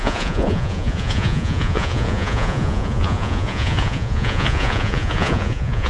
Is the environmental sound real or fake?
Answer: fake